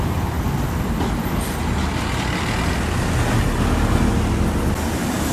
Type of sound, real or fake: real